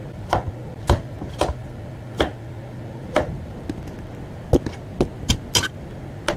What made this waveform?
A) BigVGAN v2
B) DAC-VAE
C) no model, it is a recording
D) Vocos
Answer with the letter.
C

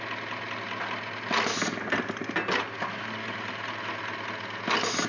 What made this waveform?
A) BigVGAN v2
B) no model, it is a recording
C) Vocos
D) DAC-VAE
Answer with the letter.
B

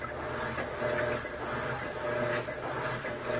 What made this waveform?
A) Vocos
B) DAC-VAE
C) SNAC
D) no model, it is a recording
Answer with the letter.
D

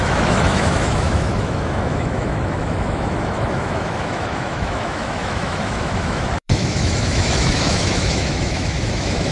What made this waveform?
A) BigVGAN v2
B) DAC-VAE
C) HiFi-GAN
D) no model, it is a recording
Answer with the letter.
B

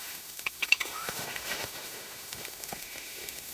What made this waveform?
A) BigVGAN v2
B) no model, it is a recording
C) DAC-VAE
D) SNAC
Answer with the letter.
C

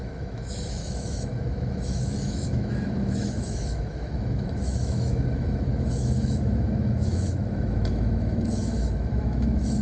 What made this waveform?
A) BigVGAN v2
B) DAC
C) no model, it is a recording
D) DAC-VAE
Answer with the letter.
D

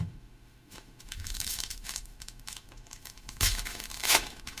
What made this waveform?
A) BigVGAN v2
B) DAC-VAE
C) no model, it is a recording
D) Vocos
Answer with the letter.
B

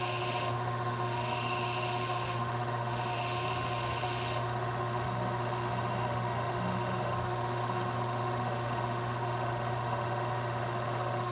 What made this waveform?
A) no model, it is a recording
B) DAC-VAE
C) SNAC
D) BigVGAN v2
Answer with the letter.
B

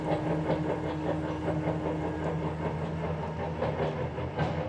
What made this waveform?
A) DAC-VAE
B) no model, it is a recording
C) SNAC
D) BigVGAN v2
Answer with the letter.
B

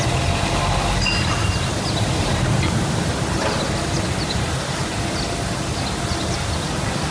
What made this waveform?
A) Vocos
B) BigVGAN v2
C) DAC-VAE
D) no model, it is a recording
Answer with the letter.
D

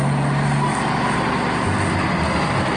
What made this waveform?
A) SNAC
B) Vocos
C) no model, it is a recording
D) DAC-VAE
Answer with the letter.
C